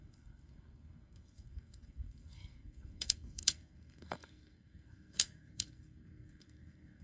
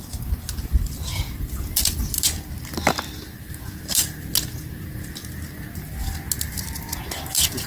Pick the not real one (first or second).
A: first